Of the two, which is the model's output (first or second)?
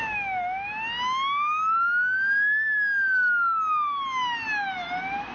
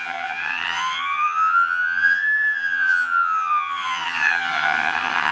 second